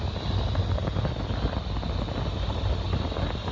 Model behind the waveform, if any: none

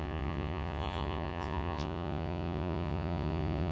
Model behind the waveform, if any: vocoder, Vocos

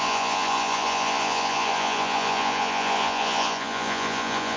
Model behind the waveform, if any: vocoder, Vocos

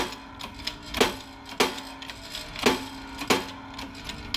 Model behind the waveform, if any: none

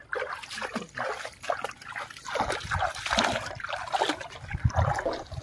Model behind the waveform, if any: none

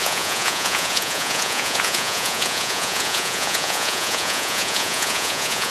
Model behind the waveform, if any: vocoder, Vocos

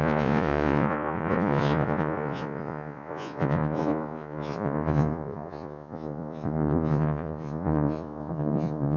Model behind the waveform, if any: vocoder, Vocos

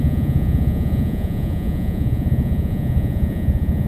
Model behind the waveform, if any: vocoder, Vocos